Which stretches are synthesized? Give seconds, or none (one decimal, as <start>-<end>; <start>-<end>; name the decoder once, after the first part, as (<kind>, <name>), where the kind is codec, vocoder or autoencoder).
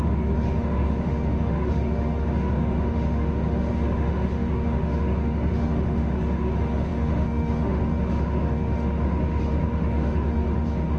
0.0-11.0 (autoencoder, DAC-VAE)